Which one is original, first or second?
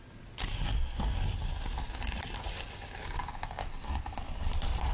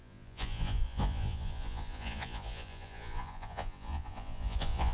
first